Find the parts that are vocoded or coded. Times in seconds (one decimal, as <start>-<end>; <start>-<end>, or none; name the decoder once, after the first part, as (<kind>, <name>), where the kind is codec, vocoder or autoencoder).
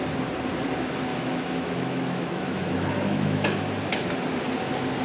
1.1-3.6 (autoencoder, DAC-VAE)